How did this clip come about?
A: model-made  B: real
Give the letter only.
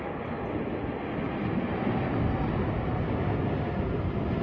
B